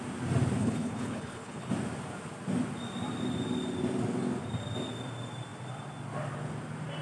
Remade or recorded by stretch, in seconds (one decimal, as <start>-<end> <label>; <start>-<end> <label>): 0.0-0.6 recorded; 0.6-1.7 remade; 1.7-7.0 recorded